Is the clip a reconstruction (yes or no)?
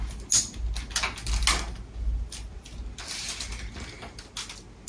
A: no